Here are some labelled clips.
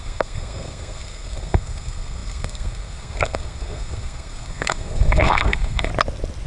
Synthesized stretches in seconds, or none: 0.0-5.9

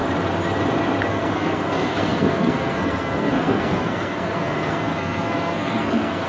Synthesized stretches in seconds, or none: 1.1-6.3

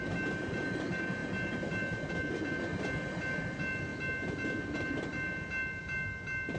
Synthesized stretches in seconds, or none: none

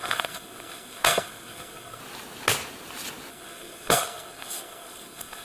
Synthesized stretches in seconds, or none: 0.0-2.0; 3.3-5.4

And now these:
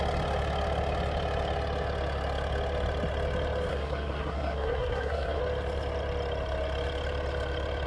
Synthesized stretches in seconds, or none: 3.7-5.4